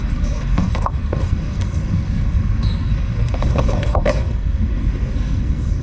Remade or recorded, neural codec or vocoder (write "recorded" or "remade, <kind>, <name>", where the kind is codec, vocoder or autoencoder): remade, codec, SNAC